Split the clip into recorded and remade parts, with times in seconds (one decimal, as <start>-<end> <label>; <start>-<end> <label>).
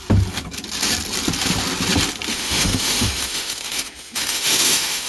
0.0-2.3 recorded; 2.3-5.1 remade